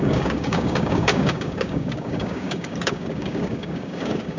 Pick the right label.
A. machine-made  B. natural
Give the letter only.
A